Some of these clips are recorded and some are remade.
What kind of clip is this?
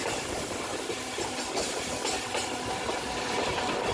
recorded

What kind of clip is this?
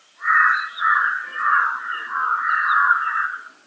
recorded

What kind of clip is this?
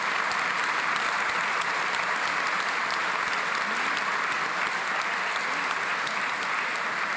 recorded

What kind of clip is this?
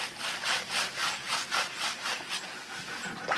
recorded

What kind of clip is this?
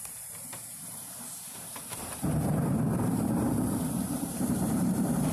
remade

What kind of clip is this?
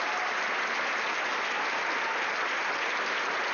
recorded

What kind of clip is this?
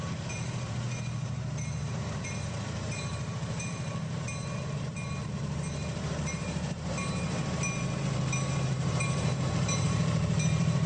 remade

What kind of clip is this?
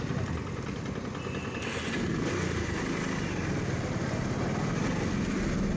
recorded